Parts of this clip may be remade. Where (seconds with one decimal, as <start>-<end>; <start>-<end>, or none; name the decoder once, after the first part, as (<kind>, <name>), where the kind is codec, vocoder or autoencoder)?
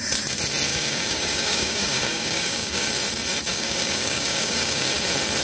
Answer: 0.7-2.9 (codec, DAC); 3.5-4.9